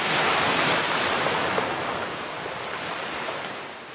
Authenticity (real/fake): real